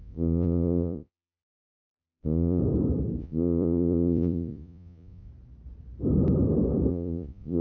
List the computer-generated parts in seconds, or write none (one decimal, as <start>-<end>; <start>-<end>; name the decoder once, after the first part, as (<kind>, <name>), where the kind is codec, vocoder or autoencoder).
0.0-2.6 (vocoder, Vocos); 3.2-5.3; 6.9-7.6